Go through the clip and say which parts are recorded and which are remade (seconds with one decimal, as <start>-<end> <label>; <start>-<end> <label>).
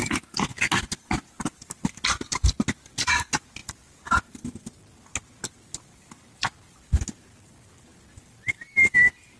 0.0-9.4 recorded